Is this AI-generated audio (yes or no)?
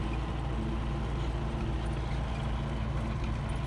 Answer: no